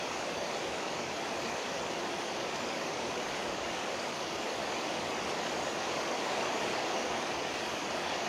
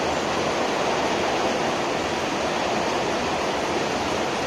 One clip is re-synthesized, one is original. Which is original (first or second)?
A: second